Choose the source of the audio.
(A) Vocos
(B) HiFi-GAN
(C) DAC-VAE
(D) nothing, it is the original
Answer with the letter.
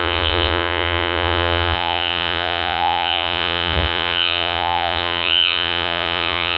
A